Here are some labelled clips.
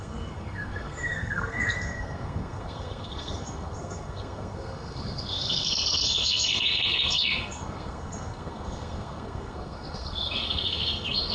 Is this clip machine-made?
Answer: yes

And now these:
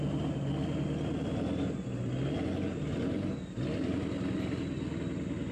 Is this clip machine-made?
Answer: no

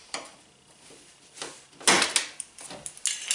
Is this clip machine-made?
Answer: no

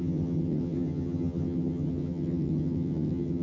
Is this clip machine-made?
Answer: yes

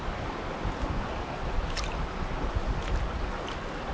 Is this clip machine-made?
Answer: no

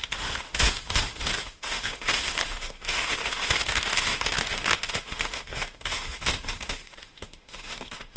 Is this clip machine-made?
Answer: yes